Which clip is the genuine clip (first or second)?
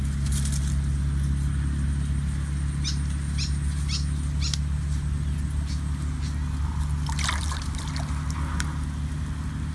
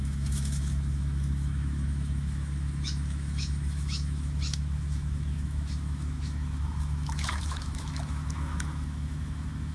first